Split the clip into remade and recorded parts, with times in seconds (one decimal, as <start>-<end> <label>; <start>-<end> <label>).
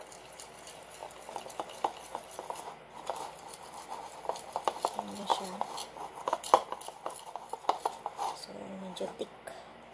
0.0-1.0 remade; 1.0-2.6 recorded; 2.6-5.3 remade; 5.3-6.1 recorded; 6.1-9.9 remade